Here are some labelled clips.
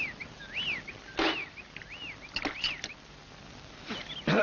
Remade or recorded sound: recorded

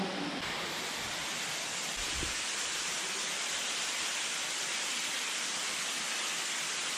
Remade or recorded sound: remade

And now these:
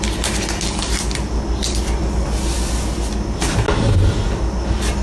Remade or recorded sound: recorded